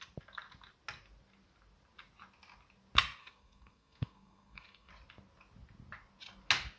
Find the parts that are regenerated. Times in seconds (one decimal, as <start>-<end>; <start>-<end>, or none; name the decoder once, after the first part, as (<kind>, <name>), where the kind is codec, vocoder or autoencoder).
3.2-4.9 (codec, SNAC)